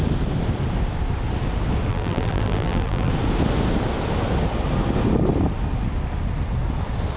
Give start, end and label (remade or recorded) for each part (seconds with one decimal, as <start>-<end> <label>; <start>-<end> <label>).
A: 0.0-1.9 recorded; 1.9-3.1 remade; 3.1-7.2 recorded